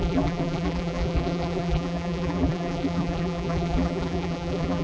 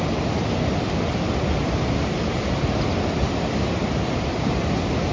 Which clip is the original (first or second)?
second